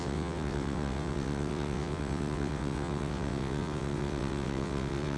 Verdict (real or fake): fake